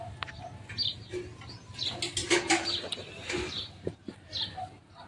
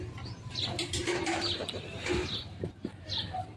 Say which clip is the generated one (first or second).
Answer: second